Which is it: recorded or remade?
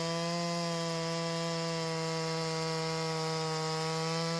recorded